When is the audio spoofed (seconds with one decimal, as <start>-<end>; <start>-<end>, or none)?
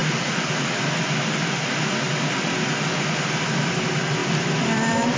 0.0-0.8; 4.2-5.2